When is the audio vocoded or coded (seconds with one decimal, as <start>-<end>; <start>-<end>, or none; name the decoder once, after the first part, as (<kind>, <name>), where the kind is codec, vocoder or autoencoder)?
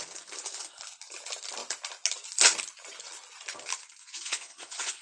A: 4.0-5.0 (vocoder, Vocos)